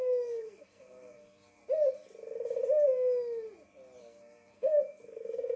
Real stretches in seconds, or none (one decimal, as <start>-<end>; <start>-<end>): 1.6-4.0